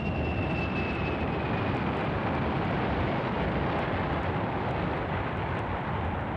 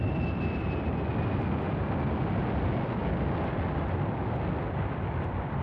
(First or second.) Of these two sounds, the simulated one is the first